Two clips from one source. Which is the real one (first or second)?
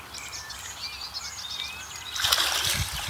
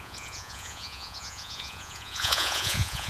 first